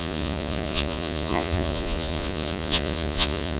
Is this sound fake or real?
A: fake